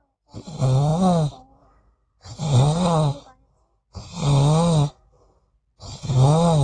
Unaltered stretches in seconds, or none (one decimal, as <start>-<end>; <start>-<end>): 0.0-6.6

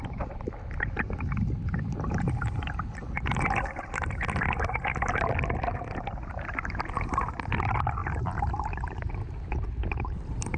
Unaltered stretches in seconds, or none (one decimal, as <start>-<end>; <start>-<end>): 0.0-10.6

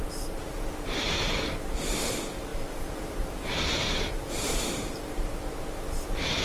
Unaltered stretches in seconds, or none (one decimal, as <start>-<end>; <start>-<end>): none

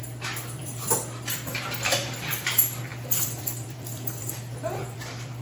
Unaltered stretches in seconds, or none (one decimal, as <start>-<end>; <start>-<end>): none

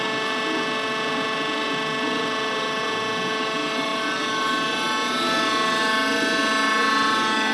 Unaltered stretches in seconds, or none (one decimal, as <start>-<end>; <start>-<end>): 0.0-7.5